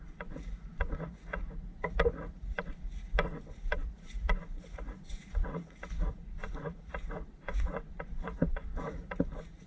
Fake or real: fake